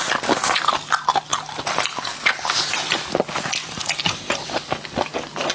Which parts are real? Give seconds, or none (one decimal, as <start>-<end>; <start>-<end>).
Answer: 0.0-5.5

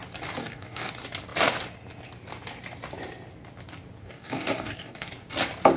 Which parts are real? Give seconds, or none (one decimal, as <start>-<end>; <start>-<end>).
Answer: 0.0-0.4; 0.9-4.0; 5.1-5.8

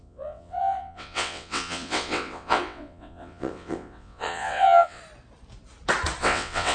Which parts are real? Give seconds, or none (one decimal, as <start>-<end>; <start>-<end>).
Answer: 5.0-6.2

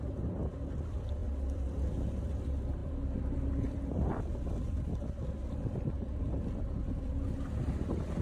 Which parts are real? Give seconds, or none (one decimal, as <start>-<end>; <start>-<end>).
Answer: 0.0-2.8; 4.2-5.4; 7.1-8.2